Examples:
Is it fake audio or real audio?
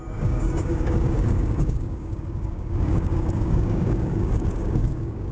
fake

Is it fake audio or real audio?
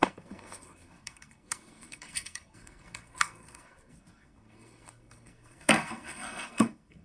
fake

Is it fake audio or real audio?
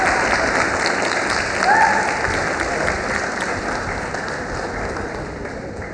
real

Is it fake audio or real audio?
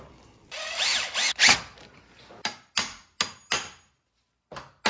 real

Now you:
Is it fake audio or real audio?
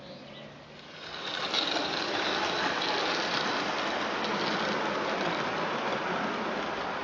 real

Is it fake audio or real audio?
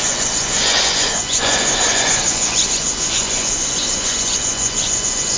fake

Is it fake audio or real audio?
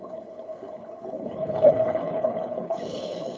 fake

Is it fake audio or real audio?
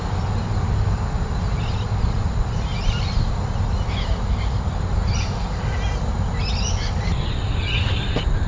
real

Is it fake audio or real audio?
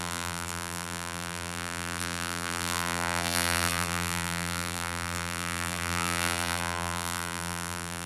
fake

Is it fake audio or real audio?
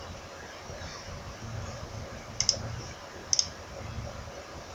real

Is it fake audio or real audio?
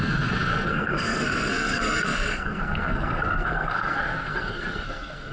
fake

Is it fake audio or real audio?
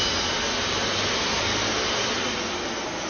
real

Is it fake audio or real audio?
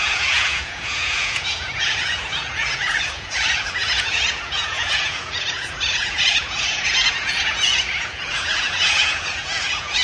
fake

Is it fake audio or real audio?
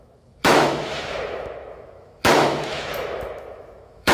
fake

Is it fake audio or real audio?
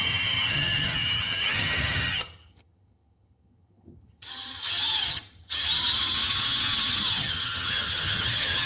fake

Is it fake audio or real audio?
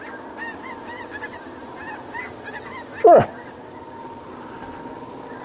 real